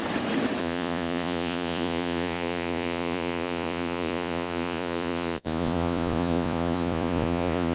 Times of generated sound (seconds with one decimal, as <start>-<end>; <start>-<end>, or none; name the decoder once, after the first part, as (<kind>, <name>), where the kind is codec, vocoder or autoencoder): 0.6-7.7 (vocoder, Vocos)